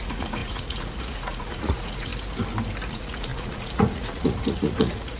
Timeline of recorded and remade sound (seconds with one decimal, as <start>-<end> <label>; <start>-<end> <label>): 0.0-2.1 remade; 2.1-2.9 recorded; 2.9-5.2 remade